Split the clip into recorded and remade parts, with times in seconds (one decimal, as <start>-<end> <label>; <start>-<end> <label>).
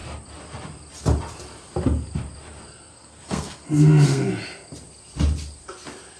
0.0-2.9 recorded; 2.9-4.3 remade; 4.3-6.2 recorded